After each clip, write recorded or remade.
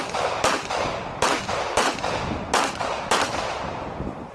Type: recorded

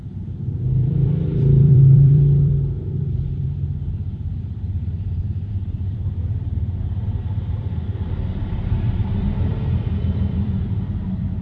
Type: remade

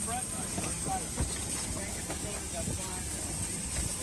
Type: recorded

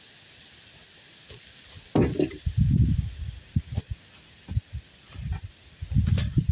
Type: recorded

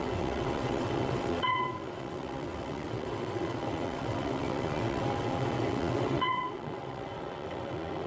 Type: remade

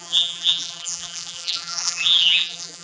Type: remade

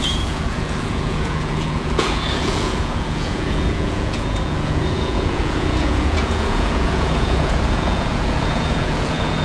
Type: remade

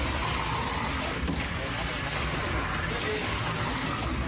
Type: recorded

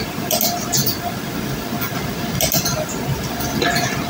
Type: recorded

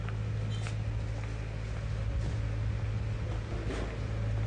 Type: recorded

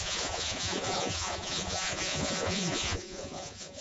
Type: remade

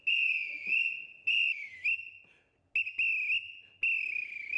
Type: recorded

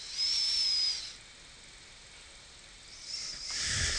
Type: recorded